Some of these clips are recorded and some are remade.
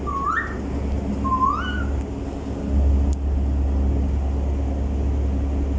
recorded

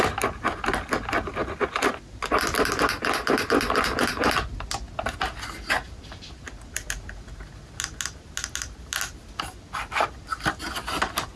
recorded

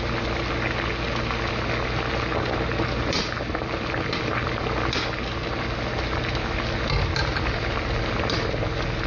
recorded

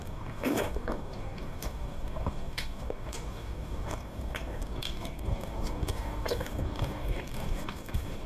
remade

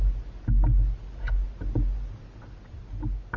recorded